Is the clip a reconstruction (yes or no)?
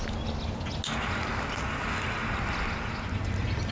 no